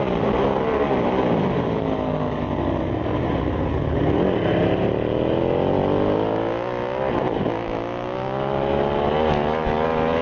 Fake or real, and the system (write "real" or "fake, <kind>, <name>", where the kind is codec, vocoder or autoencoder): real